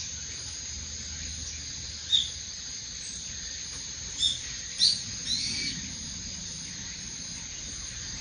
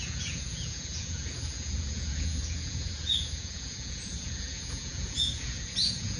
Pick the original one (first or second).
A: first